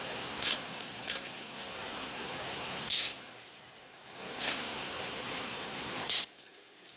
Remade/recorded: remade